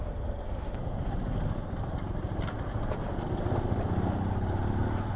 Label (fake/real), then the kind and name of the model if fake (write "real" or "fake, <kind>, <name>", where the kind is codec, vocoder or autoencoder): real